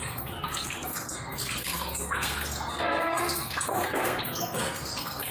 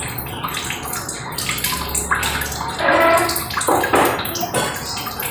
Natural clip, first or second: second